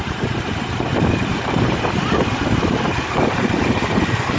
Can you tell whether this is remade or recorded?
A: remade